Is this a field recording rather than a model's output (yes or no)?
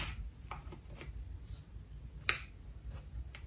yes